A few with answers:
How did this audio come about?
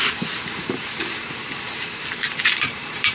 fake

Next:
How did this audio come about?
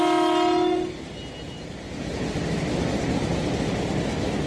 real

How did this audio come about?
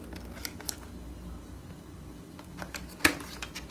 real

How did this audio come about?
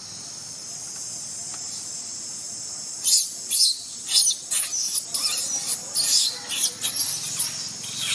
real